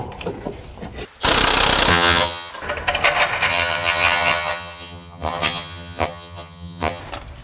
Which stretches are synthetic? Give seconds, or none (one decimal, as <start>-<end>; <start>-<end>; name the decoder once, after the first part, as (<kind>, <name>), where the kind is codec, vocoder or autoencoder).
1.9-2.5 (vocoder, HiFi-GAN); 3.5-7.0